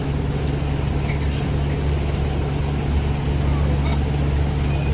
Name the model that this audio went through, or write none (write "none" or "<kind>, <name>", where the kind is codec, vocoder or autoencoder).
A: none